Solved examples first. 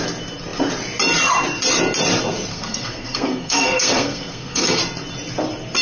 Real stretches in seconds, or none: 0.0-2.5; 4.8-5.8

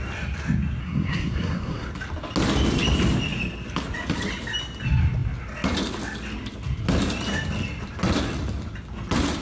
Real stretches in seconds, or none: 0.0-0.8; 1.9-9.4

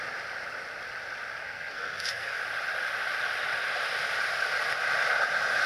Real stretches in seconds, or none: 0.0-1.4; 2.4-5.7

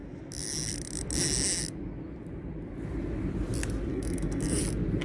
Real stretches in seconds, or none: 0.0-3.9; 4.6-5.0

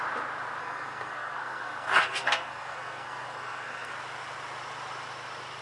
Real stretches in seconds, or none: 0.0-0.6; 3.9-5.6

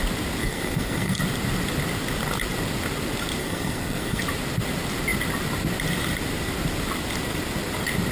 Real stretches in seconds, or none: 0.0-0.4; 1.2-3.4; 4.2-8.1

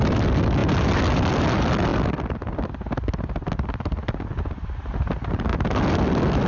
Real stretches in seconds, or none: 0.0-6.5